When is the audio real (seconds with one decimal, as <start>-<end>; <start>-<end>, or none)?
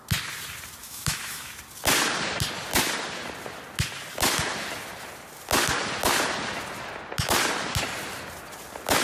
0.0-0.8; 1.5-9.0